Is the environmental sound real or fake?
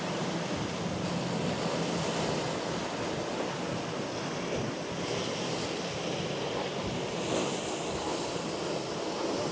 real